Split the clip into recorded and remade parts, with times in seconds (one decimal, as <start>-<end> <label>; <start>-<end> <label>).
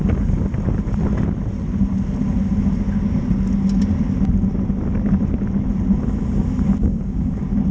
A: 0.0-6.8 recorded; 6.8-7.3 remade; 7.3-7.7 recorded